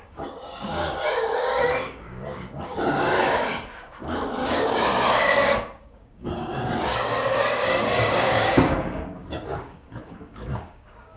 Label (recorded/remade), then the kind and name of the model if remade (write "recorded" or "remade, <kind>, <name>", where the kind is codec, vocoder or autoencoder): remade, codec, DAC